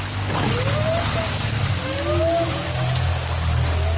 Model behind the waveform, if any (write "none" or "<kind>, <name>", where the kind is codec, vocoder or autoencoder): none